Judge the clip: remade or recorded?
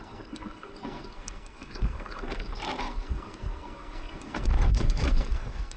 remade